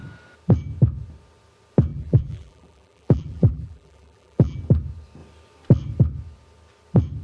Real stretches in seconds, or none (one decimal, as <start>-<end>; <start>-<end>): 0.0-1.9; 4.6-7.2